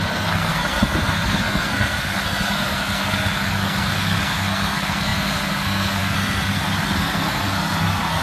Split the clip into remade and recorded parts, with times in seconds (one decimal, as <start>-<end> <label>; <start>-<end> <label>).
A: 0.0-8.2 remade